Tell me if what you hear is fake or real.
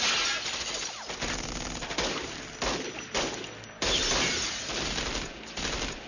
real